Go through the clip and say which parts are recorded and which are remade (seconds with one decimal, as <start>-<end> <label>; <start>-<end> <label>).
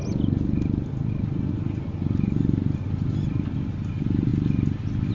0.0-5.1 recorded